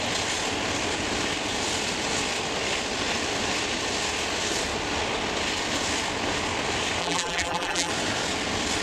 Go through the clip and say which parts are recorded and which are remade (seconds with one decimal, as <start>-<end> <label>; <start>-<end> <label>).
0.0-7.0 recorded; 7.0-7.9 remade; 7.9-8.8 recorded